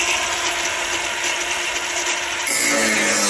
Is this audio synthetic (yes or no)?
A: no